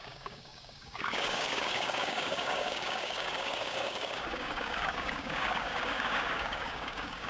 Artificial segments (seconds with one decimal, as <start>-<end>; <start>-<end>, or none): 0.0-7.3